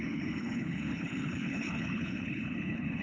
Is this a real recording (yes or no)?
no